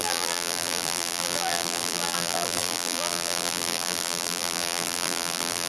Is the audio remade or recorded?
remade